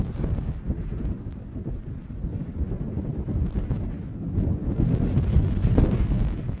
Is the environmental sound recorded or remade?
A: recorded